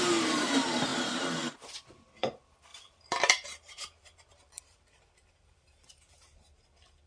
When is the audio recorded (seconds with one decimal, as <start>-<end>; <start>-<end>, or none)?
none